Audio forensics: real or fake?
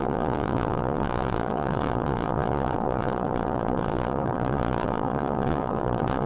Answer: fake